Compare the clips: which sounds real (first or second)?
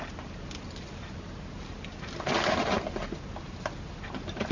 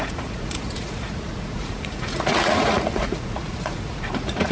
first